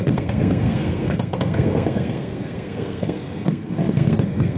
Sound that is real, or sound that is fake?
fake